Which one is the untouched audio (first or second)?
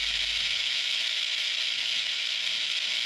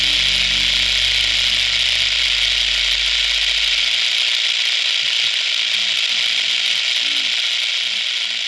second